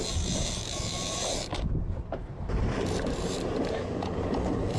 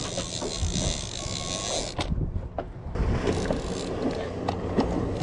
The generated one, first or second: first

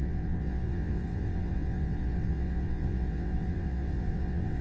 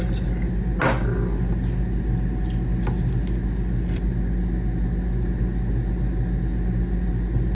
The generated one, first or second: first